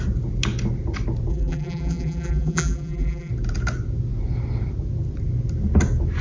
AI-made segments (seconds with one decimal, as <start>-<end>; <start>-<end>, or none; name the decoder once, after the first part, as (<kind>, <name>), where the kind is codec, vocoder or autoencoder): 1.3-3.3 (vocoder, BigVGAN v2)